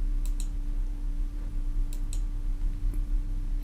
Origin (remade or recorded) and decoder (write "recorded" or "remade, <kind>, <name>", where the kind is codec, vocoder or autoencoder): recorded